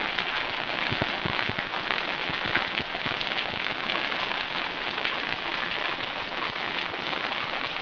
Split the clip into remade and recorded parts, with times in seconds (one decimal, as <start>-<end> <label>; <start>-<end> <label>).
0.0-7.8 remade